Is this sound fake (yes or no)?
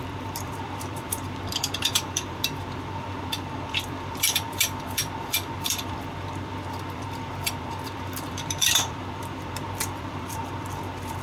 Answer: yes